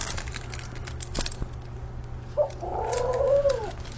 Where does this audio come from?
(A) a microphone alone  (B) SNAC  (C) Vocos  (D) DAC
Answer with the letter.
A